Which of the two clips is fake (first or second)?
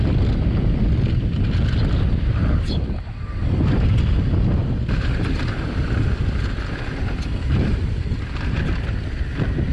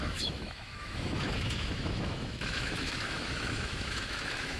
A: second